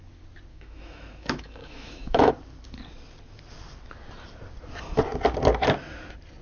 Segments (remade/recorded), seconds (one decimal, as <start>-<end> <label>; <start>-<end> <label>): 0.0-0.5 recorded; 0.5-2.3 remade; 2.3-6.4 recorded